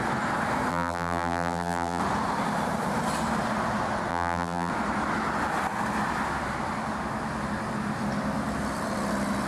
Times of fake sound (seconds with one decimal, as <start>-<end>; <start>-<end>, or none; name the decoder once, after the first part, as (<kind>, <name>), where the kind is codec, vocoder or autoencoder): 0.7-2.0 (vocoder, BigVGAN v2); 4.1-4.7

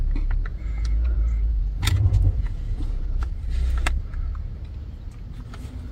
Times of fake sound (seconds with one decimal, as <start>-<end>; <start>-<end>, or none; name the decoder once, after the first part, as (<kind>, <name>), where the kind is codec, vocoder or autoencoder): 0.5-3.3 (vocoder, Vocos)

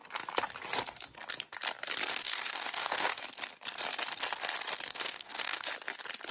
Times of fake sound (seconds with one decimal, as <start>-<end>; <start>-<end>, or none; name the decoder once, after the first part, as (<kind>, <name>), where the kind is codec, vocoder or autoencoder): 2.1-3.2 (codec, DAC); 4.9-5.7

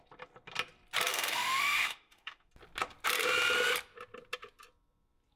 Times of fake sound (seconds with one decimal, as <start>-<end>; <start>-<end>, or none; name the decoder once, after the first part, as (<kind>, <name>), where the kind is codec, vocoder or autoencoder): 1.1-2.5 (autoencoder, DAC-VAE)